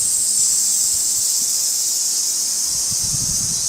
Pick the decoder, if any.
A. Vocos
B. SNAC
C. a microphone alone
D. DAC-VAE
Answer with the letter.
C